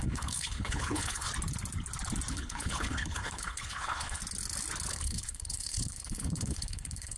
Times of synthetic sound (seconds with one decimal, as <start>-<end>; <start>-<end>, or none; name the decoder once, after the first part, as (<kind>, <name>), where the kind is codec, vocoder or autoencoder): 0.0-1.3 (codec, HILCodec); 2.3-4.2; 4.9-7.2